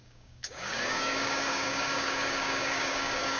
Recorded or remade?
remade